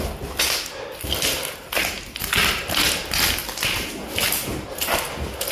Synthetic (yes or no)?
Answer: no